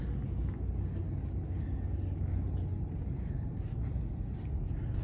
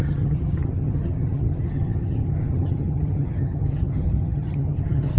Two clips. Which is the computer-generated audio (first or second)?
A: second